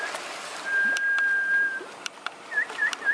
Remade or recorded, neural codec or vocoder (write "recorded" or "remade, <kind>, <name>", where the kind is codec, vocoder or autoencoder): recorded